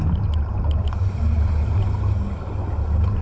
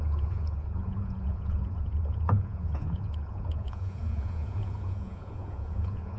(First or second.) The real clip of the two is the first